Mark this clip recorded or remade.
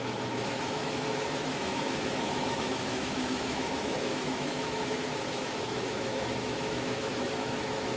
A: remade